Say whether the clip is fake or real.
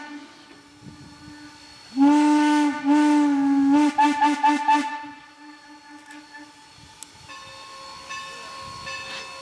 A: real